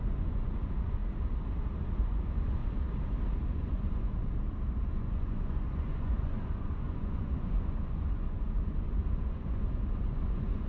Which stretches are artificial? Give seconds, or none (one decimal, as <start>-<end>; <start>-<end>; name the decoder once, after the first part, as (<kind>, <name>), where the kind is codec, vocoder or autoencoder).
0.0-1.0 (vocoder, Vocos); 1.8-2.6; 3.5-4.2; 4.9-10.7